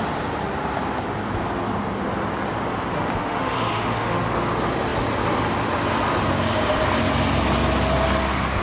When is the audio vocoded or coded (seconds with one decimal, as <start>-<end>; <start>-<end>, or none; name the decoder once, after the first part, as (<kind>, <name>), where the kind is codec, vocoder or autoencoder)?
3.2-4.2 (autoencoder, DAC-VAE)